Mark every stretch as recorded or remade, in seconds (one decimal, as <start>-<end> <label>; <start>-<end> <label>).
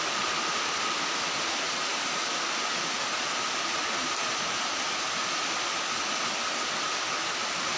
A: 0.0-7.8 recorded